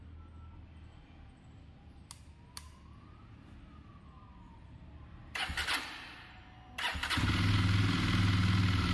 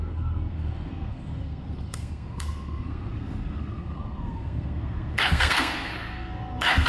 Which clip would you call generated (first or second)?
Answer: second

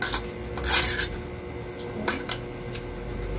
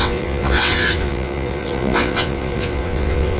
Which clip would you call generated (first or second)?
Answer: second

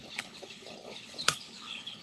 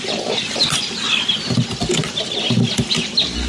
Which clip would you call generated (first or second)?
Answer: first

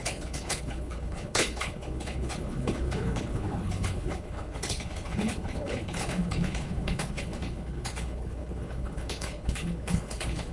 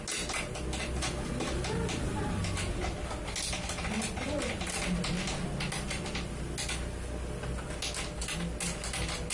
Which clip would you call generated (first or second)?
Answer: first